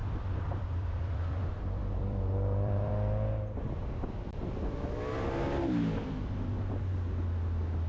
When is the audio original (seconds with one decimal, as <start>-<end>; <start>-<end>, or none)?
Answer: 1.4-1.8; 2.9-7.9